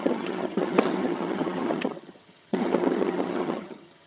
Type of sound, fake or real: fake